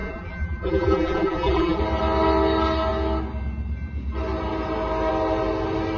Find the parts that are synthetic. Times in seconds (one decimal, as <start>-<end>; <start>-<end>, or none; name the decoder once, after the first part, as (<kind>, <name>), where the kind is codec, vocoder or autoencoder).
0.0-1.8 (vocoder, BigVGAN v2)